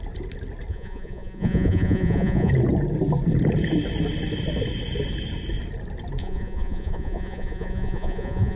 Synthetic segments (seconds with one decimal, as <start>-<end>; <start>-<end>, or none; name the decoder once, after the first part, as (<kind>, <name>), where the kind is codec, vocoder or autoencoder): 0.7-2.5 (vocoder, Vocos); 6.2-8.6